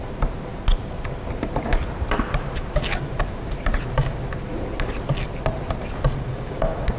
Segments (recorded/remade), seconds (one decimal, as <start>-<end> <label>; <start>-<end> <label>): 0.0-6.3 recorded; 6.3-7.0 remade